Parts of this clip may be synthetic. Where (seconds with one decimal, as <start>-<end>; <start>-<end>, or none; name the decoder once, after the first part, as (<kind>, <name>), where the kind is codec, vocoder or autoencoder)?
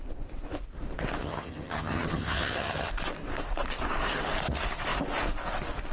1.2-2.9 (vocoder, HiFi-GAN)